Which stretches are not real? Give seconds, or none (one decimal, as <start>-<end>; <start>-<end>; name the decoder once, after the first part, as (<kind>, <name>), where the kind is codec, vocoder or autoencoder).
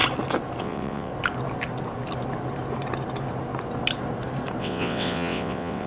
0.6-1.1 (vocoder, WaveNeXt); 4.6-5.9